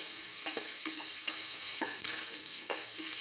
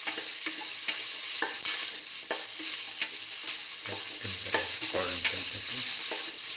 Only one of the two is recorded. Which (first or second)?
second